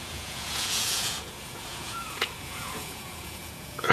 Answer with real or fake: fake